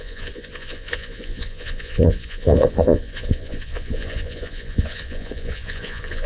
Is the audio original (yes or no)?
no